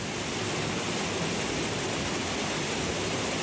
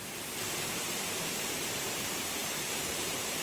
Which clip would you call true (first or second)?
first